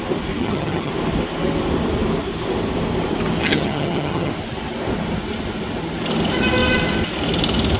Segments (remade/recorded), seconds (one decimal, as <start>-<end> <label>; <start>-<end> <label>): 0.0-0.4 recorded; 0.4-0.9 remade; 0.9-3.4 recorded; 3.4-4.3 remade; 4.3-7.8 recorded